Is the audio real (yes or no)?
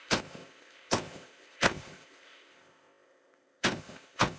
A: no